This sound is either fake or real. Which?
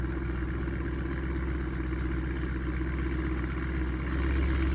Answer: real